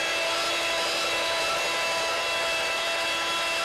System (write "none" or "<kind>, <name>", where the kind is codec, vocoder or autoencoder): none